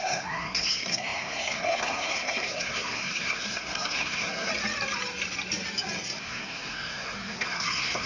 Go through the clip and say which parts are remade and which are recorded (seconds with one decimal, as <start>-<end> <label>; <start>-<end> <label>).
0.0-4.5 remade; 4.5-6.2 recorded; 6.2-8.1 remade